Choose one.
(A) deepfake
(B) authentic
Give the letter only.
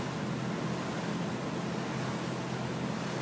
B